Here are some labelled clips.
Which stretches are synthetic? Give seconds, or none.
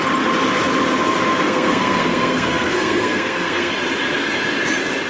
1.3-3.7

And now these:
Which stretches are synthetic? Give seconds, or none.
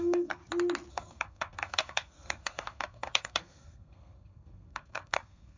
0.0-0.4; 0.9-5.6